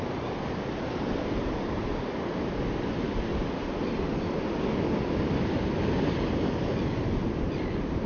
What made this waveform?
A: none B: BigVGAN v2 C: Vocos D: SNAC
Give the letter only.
A